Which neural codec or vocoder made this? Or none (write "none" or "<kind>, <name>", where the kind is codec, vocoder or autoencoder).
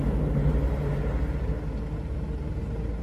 none